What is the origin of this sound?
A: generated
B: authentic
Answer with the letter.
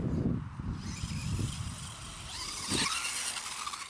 B